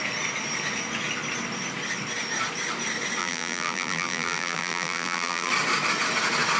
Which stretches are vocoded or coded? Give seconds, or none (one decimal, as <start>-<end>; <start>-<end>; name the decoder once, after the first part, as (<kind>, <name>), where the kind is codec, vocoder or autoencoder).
3.2-5.5 (vocoder, BigVGAN v2)